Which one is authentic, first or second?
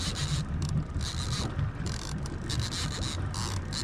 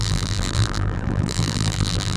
first